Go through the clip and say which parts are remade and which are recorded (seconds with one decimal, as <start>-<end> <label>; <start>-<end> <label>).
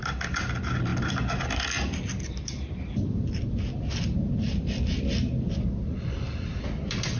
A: 0.0-7.2 recorded